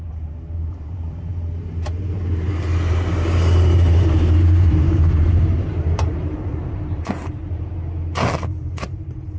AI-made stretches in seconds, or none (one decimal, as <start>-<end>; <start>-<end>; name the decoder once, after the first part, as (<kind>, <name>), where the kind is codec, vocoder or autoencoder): 0.0-7.8 (vocoder, BigVGAN v2); 8.3-9.4